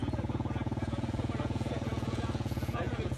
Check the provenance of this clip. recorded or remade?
remade